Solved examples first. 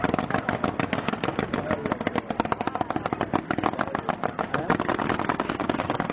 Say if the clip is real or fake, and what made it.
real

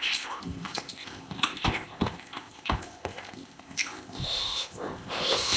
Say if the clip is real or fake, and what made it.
fake, codec, ZipCodec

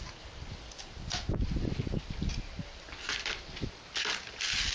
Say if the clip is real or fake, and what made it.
real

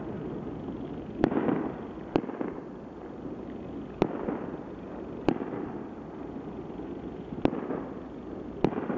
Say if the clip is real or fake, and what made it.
real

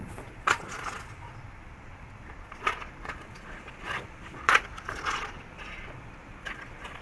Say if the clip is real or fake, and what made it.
fake, vocoder, Vocos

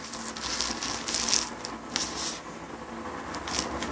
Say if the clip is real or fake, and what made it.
real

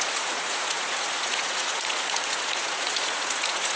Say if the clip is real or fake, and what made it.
fake, vocoder, Vocos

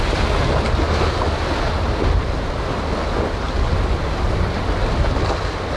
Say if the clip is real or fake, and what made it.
real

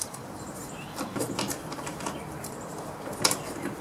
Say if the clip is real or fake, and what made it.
fake, vocoder, BigVGAN v2